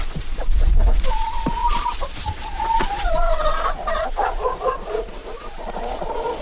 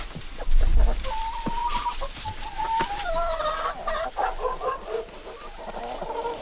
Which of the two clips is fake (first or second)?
first